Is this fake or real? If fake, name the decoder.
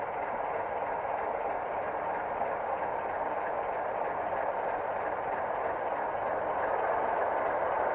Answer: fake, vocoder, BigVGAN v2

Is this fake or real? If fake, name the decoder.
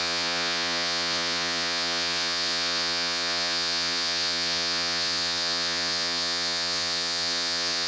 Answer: fake, vocoder, Vocos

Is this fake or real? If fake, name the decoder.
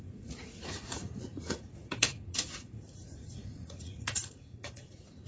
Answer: fake, vocoder, Vocos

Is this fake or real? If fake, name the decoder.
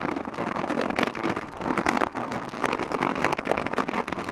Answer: fake, codec, SNAC